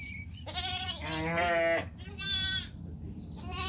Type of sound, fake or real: real